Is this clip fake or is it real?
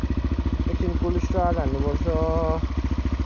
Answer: real